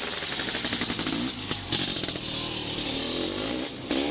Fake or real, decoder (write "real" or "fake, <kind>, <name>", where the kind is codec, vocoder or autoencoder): real